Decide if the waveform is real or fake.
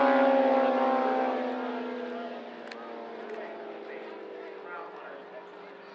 real